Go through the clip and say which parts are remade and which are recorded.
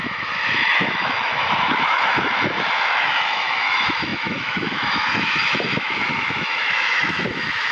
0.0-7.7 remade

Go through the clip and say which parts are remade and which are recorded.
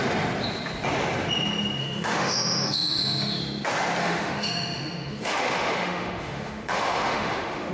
0.0-1.8 recorded; 1.8-3.4 remade; 3.4-4.0 recorded; 4.0-7.7 remade